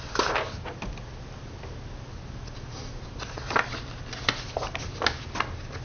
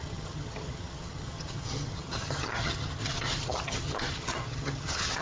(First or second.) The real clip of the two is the first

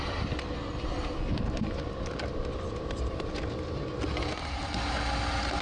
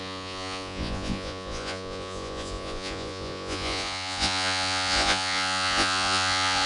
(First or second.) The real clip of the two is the first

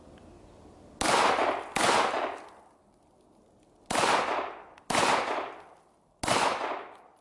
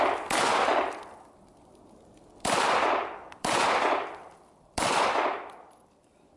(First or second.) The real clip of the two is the first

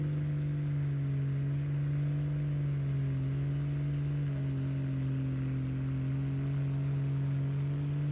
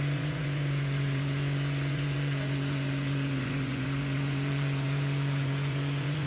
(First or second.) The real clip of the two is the first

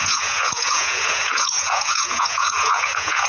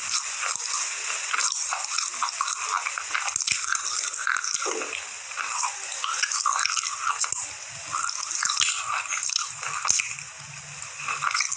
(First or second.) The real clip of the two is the second